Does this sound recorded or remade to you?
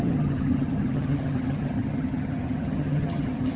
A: remade